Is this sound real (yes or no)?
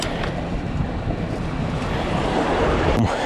yes